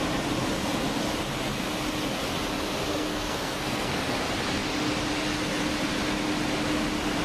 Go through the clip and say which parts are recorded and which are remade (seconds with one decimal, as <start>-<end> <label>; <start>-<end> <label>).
0.0-2.9 recorded; 2.9-4.0 remade; 4.0-7.2 recorded